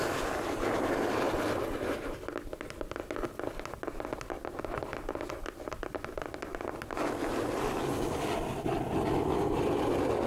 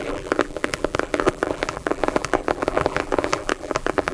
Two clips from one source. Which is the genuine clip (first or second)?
first